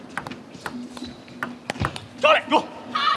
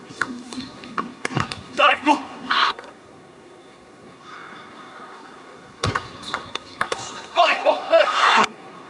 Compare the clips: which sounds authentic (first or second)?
first